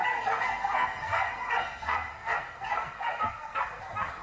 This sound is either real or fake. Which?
fake